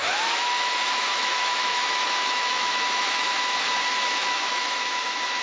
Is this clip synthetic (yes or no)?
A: yes